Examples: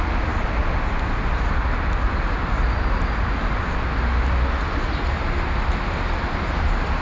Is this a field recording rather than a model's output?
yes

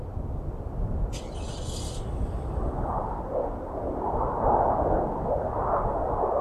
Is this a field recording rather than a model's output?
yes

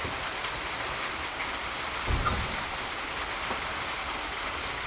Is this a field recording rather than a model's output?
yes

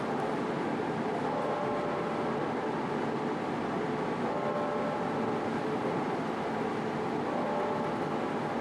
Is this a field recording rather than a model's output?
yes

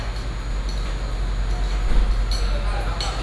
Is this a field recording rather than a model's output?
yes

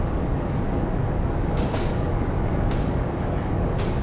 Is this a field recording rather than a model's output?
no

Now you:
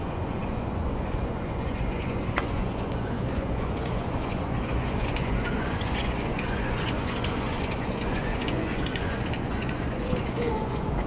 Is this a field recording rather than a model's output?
no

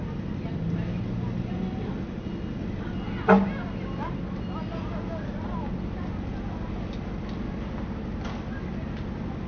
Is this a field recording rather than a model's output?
yes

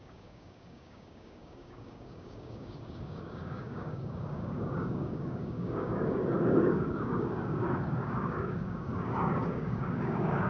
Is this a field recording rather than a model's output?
no